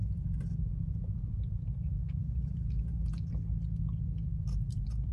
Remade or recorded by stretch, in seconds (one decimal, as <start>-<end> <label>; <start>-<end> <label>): 0.0-3.1 remade; 3.1-4.3 recorded; 4.3-5.1 remade